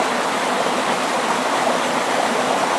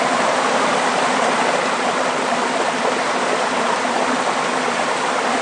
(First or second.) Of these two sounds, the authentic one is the first